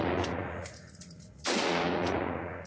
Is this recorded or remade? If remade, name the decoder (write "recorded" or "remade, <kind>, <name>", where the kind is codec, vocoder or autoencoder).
remade, vocoder, Vocos